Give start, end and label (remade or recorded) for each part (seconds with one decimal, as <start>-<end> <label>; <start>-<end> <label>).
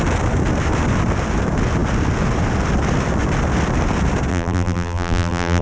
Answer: 0.0-4.3 recorded; 4.3-5.6 remade